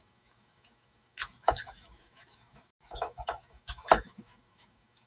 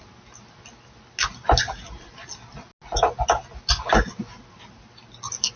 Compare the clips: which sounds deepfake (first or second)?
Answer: first